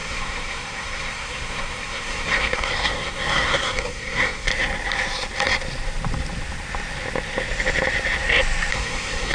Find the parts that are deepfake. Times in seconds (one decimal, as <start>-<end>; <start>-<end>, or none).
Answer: 0.0-4.5; 8.7-9.3